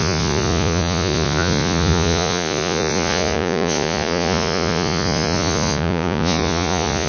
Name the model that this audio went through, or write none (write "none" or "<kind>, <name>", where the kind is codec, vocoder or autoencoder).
vocoder, Vocos